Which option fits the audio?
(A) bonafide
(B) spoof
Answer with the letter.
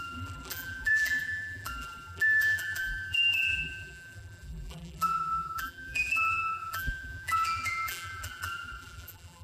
B